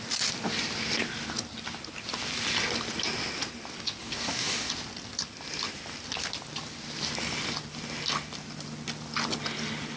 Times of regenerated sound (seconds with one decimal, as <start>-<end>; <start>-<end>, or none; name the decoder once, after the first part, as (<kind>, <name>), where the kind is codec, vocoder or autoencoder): 4.0-4.7 (codec, DAC)